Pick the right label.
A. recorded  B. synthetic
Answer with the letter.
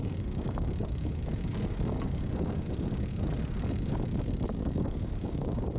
B